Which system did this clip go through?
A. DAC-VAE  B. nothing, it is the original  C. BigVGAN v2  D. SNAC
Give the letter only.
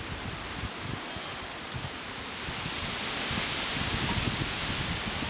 B